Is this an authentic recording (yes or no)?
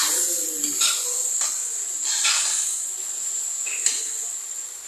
yes